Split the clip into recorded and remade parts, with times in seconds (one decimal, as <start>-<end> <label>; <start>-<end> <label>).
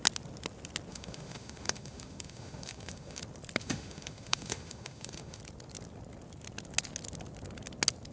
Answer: 0.0-0.9 recorded; 0.9-3.2 remade; 3.2-3.6 recorded; 3.6-5.4 remade; 5.4-8.1 recorded